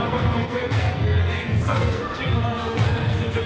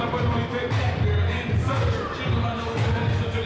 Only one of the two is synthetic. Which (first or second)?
first